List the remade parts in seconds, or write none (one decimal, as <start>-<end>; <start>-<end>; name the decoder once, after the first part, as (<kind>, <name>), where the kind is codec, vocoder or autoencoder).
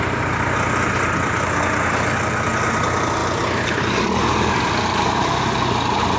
none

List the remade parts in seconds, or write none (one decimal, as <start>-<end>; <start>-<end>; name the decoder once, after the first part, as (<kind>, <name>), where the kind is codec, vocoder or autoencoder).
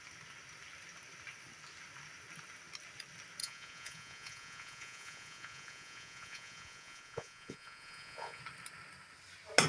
3.4-8.4 (vocoder, Vocos)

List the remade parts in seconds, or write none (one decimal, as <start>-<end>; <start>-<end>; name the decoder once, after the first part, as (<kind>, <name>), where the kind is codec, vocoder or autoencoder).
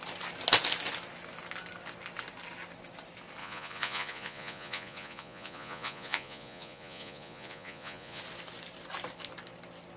3.4-8.2 (vocoder, Vocos)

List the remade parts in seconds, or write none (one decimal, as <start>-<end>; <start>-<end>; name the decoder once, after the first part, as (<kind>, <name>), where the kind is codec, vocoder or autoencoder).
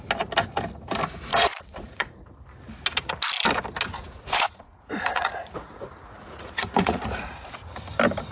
1.3-2.3 (vocoder, Vocos); 3.9-7.5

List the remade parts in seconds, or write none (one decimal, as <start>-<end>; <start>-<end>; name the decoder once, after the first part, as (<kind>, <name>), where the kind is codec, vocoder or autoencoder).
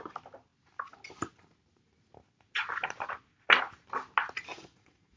4.5-5.2 (vocoder, Vocos)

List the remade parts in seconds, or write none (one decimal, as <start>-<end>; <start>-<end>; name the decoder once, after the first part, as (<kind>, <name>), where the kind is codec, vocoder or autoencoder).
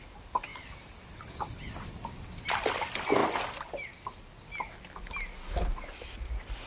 none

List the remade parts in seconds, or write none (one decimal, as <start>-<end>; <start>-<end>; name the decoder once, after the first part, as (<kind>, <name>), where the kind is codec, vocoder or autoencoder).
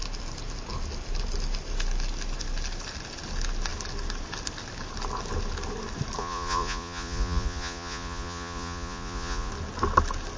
6.2-9.5 (vocoder, Vocos)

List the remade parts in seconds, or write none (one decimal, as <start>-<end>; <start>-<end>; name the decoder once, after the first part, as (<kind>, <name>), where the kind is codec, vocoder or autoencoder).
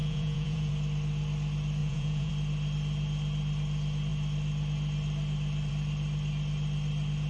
0.0-0.7 (vocoder, Vocos); 1.8-2.3